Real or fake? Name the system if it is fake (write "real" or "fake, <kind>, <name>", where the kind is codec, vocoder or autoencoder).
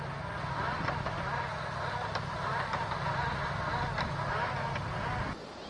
real